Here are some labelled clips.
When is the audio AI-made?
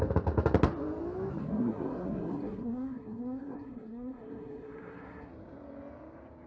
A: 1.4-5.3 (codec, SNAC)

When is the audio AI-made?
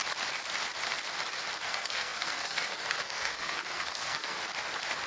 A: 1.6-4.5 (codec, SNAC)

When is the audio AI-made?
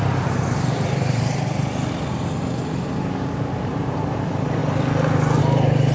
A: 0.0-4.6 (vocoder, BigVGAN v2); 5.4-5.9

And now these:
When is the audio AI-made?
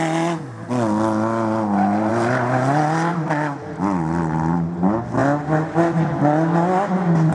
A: none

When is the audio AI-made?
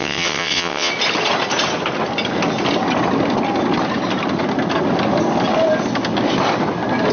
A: 0.0-0.9 (vocoder, WaveNeXt)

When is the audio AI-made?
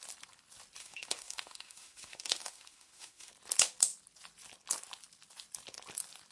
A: 0.8-3.3 (autoencoder, DAC-VAE)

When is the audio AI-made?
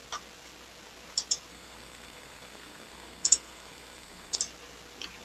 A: 1.5-4.4 (codec, SNAC)